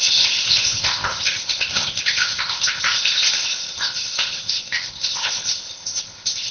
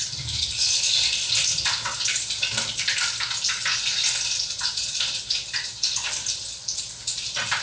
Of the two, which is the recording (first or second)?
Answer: second